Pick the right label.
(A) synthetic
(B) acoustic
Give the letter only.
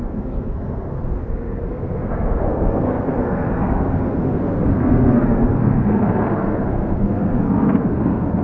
A